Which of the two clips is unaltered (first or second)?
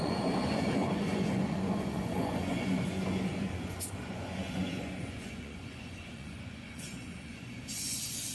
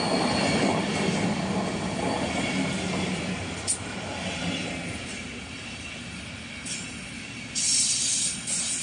second